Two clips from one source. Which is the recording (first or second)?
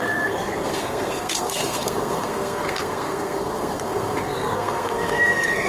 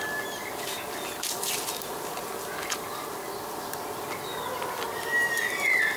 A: second